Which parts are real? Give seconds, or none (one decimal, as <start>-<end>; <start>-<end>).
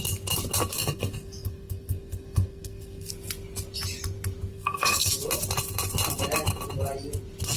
0.0-0.7; 3.1-4.5; 5.1-7.6